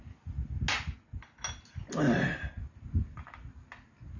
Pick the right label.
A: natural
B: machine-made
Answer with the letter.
A